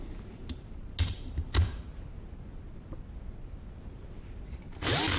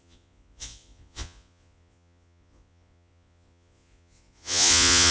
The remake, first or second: second